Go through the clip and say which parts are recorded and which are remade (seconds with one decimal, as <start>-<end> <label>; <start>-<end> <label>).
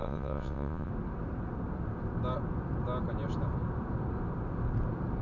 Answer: 0.0-0.9 remade; 0.9-5.2 recorded